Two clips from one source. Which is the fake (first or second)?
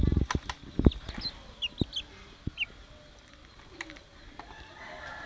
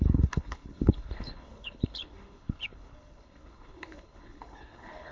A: second